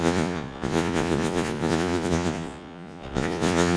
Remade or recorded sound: remade